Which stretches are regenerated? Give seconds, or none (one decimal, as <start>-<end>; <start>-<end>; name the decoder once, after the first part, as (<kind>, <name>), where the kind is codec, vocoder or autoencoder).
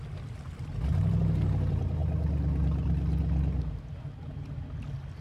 none